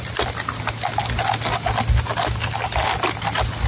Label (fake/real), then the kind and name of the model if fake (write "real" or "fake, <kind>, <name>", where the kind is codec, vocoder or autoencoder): real